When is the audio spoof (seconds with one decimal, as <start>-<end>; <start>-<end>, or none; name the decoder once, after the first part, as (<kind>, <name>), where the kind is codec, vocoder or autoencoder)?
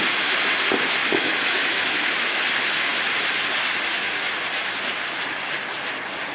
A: 1.0-2.4 (autoencoder, DAC-VAE)